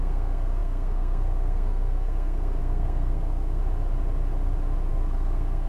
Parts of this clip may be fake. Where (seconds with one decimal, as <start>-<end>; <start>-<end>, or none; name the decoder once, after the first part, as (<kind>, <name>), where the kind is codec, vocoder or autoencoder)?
0.0-3.6 (codec, SNAC); 4.9-5.7